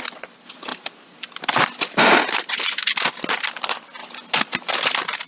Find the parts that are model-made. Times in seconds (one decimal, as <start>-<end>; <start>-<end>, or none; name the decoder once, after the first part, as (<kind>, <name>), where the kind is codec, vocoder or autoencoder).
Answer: none